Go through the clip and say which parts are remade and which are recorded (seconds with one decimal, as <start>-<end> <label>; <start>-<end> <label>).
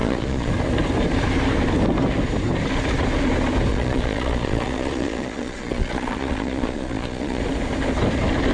0.0-0.5 remade; 0.5-3.7 recorded; 3.7-7.4 remade; 7.4-8.5 recorded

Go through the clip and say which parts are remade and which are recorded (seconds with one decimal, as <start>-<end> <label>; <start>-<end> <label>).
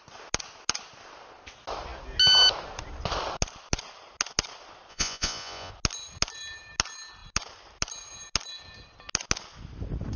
0.0-4.9 recorded; 4.9-5.7 remade; 5.7-10.2 recorded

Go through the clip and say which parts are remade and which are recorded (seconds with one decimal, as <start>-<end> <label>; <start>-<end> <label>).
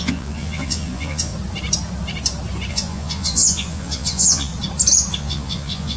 0.0-1.3 remade; 1.3-2.7 recorded; 2.7-4.5 remade; 4.5-5.2 recorded; 5.2-6.0 remade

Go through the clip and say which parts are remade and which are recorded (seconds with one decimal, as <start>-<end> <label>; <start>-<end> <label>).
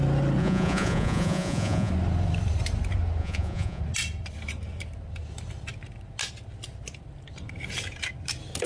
0.0-0.4 recorded; 0.4-1.9 remade; 1.9-3.2 recorded; 3.2-3.8 remade; 3.8-8.7 recorded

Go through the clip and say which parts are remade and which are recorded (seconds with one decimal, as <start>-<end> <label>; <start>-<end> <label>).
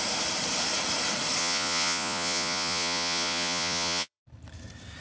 0.0-1.4 recorded; 1.4-4.2 remade; 4.2-5.0 recorded